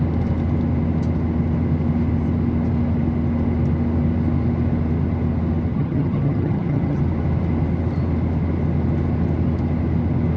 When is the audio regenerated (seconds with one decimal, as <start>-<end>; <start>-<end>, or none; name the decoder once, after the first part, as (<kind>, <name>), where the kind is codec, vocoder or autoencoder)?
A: 5.7-7.0 (vocoder, HiFi-GAN)